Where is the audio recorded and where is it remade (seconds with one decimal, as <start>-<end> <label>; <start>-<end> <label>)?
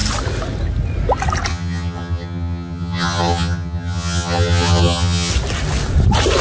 0.0-1.5 recorded; 1.5-5.3 remade; 5.3-6.4 recorded